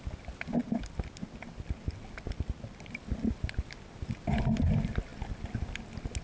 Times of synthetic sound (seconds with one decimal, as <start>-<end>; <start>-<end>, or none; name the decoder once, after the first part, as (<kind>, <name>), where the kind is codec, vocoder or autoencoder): none